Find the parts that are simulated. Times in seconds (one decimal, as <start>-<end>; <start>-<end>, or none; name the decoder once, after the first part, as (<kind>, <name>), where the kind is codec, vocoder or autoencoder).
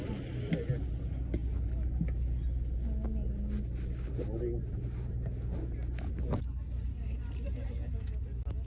none